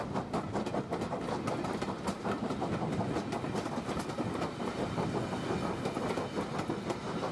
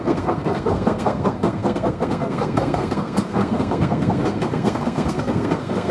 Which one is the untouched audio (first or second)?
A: first